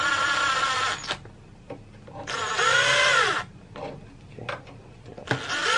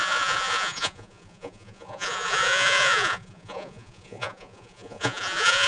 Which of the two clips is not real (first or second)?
second